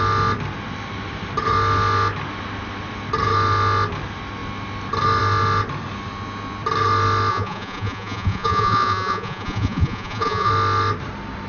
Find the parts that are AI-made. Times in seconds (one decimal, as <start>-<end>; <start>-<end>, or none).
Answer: 7.3-10.5